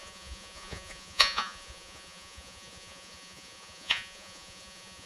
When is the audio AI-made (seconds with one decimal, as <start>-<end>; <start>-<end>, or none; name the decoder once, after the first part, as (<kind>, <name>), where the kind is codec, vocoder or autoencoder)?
0.0-5.1 (vocoder, Vocos)